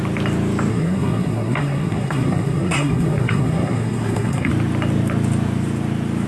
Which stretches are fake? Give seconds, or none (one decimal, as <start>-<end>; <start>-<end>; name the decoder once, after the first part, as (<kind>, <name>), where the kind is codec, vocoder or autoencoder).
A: 0.7-4.5 (codec, SNAC)